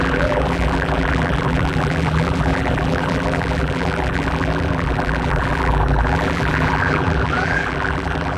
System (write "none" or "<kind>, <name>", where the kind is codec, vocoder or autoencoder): vocoder, BigVGAN v2